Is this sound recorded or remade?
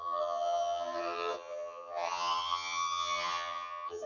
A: remade